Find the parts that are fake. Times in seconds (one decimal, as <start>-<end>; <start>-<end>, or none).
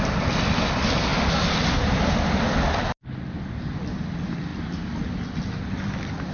none